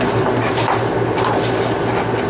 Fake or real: real